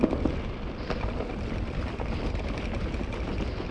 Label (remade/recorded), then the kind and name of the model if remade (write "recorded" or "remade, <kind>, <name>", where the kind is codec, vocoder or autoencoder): recorded